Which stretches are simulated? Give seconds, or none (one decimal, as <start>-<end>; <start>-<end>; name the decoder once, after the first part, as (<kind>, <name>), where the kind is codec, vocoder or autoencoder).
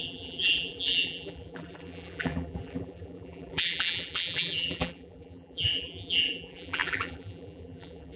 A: 0.0-8.2 (vocoder, BigVGAN v2)